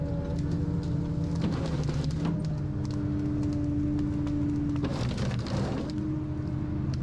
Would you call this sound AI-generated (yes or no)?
no